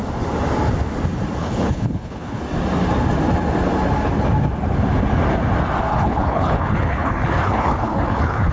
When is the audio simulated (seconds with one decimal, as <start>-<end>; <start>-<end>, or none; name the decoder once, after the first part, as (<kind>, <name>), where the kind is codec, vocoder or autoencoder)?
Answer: 1.4-2.4 (codec, HILCodec); 5.9-8.5